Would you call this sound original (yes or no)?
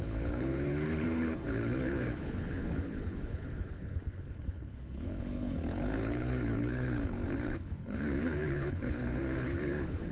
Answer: no